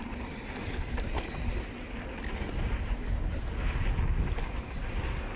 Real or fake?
real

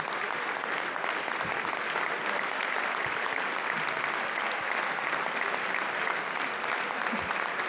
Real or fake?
real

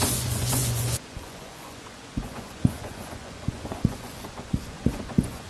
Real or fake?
fake